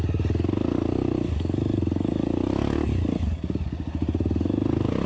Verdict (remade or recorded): recorded